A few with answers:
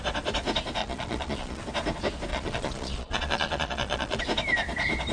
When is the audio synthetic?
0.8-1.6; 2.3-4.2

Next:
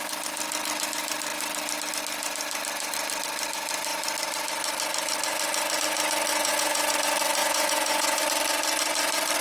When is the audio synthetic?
6.3-6.9; 7.4-8.2

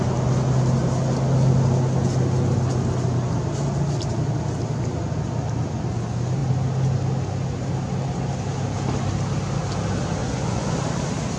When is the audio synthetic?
10.2-10.7

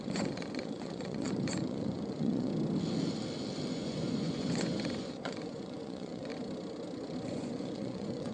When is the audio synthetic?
0.0-2.5; 3.7-6.3; 7.3-8.3